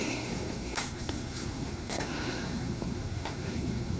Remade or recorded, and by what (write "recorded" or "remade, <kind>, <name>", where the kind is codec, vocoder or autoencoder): remade, codec, SNAC